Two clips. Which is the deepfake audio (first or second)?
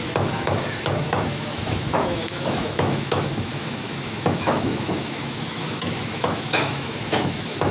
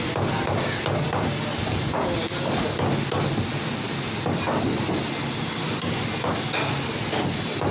first